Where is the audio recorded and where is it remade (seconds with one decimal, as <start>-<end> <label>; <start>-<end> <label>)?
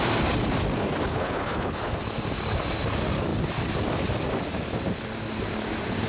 0.0-1.1 recorded; 1.1-1.9 remade; 1.9-6.1 recorded